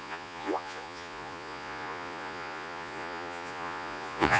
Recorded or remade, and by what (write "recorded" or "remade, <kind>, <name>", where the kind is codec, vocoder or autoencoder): remade, vocoder, Vocos